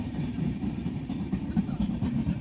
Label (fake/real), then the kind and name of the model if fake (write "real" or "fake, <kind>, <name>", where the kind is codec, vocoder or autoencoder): fake, vocoder, BigVGAN v2